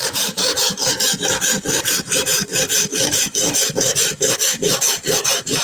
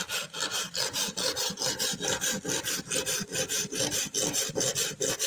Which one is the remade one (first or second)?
first